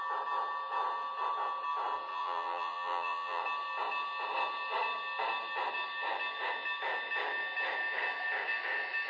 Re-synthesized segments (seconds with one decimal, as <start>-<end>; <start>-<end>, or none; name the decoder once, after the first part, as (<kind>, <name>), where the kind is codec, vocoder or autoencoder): 2.1-3.4 (vocoder, BigVGAN v2)